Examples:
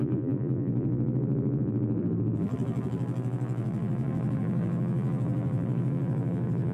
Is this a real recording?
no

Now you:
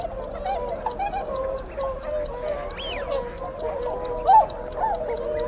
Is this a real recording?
yes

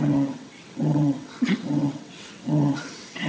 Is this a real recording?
no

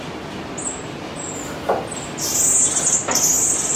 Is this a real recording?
yes